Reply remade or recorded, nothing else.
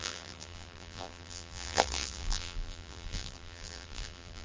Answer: remade